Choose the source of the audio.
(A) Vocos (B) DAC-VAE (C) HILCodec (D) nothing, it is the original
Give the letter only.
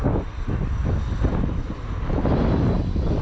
D